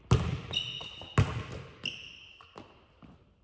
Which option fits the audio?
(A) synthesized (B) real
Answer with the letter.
B